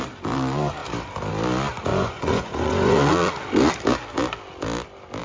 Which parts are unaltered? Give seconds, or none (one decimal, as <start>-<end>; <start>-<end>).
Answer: 0.0-1.9; 3.3-5.2